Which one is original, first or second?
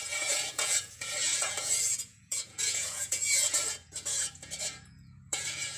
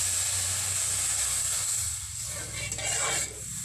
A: second